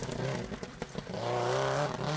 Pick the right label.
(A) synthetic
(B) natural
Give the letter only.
B